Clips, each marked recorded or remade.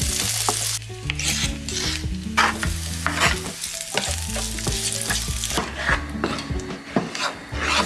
recorded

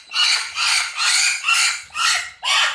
recorded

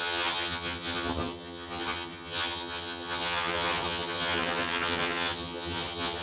remade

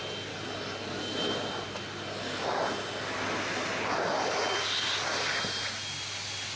recorded